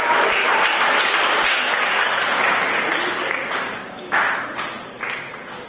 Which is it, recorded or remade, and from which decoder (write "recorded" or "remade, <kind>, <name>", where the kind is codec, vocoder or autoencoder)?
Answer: recorded